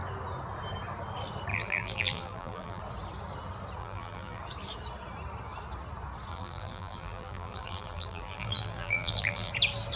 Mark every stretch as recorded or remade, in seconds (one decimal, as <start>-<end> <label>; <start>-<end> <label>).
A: 0.0-1.5 recorded; 1.5-2.8 remade; 2.8-3.8 recorded; 3.8-4.4 remade; 4.4-6.3 recorded; 6.3-9.5 remade; 9.5-10.0 recorded